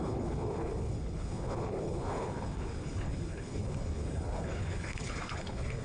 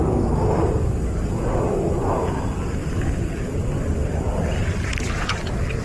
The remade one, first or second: first